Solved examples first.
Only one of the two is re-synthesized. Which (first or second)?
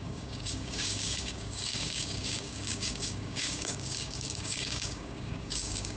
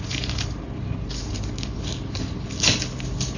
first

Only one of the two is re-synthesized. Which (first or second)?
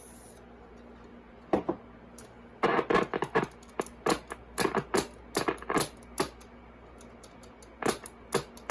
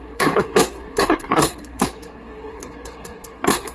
second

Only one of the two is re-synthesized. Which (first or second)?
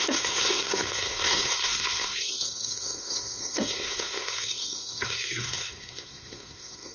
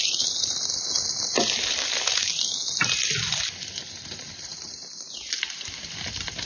first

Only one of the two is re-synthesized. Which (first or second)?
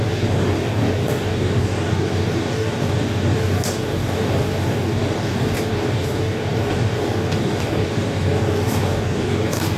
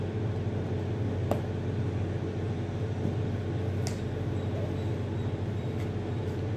first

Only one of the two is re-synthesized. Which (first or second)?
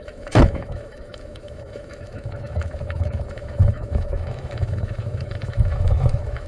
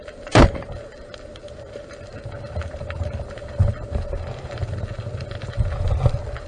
first